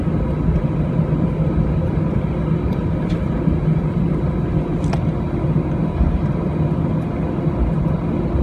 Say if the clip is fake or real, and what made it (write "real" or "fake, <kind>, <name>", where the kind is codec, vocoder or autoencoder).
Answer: real